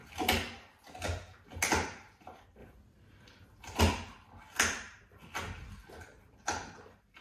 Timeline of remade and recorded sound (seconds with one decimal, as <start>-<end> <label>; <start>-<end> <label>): 0.0-7.2 recorded